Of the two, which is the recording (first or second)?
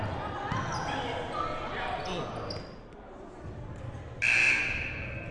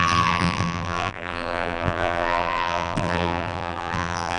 first